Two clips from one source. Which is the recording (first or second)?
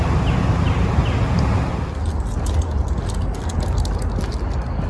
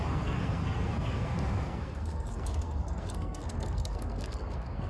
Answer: first